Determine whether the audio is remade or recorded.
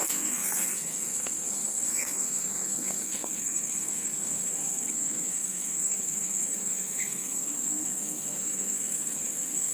remade